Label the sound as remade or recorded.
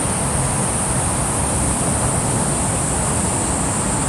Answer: recorded